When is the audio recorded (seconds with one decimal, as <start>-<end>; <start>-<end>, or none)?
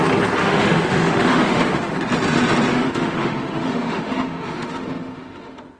0.0-0.4; 1.9-2.7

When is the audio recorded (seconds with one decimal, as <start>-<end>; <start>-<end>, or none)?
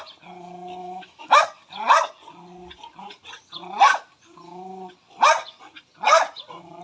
0.0-0.8; 1.4-6.8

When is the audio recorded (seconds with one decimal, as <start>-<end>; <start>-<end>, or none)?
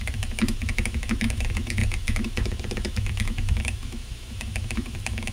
none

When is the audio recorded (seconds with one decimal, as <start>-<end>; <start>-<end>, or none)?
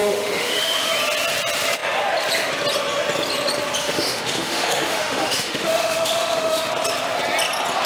0.9-3.8; 6.7-7.9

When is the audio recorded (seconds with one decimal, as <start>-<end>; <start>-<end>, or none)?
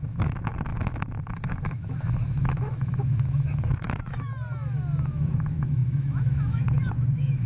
4.3-5.1